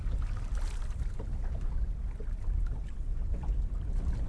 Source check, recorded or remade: recorded